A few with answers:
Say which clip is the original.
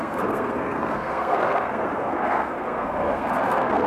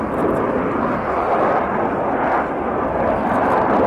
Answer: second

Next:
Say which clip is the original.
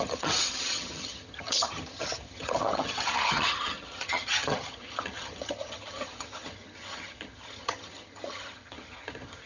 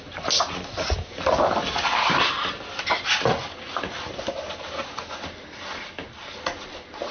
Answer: second